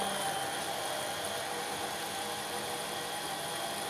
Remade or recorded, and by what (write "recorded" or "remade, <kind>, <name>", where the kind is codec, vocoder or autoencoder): recorded